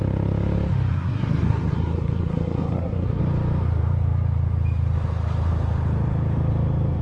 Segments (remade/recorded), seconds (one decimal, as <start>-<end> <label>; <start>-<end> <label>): 0.0-0.9 recorded; 0.9-3.2 remade; 3.2-7.0 recorded